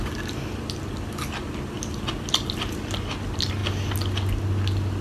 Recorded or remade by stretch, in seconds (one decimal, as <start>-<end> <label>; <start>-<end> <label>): 0.0-5.0 recorded